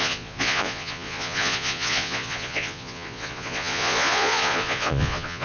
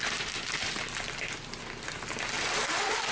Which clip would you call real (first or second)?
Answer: second